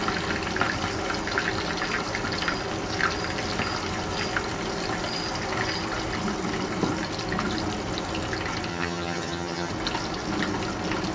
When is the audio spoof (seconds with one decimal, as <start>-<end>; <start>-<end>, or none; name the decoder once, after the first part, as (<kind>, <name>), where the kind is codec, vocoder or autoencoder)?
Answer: 8.7-9.7 (vocoder, HiFi-GAN)